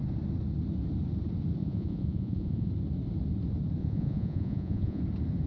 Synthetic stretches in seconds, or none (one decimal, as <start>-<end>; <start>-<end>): 1.6-2.7; 3.8-5.0